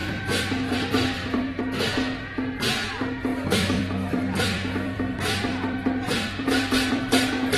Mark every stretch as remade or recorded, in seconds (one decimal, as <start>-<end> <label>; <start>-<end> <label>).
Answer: 0.0-1.6 remade; 1.6-3.3 recorded; 3.3-7.0 remade; 7.0-7.6 recorded